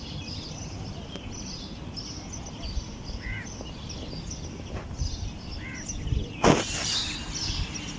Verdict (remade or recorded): recorded